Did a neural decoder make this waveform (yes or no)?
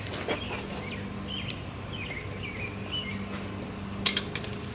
no